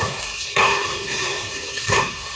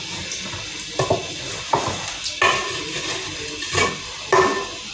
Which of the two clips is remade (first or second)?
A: first